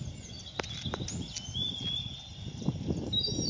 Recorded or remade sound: recorded